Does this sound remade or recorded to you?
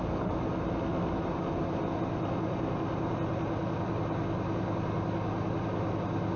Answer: recorded